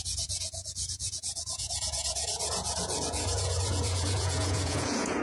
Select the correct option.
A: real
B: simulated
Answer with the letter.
B